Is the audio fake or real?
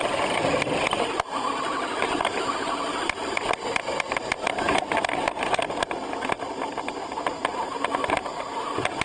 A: real